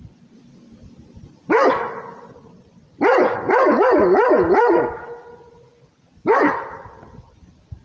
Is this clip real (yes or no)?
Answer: yes